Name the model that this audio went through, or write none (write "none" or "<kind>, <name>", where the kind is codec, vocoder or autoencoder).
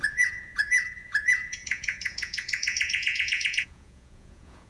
vocoder, Vocos